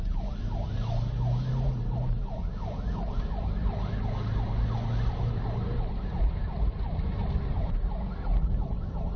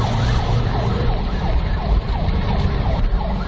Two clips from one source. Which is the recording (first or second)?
first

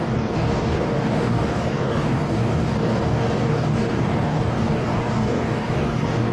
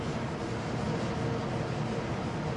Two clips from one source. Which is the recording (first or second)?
second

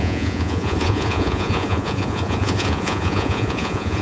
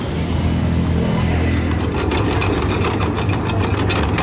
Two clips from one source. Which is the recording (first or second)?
second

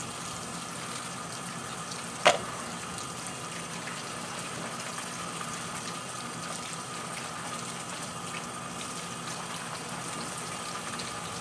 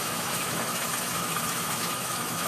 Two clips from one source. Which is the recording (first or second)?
first